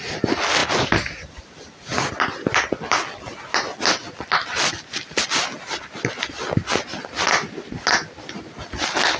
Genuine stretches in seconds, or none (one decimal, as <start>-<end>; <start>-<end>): 0.0-9.2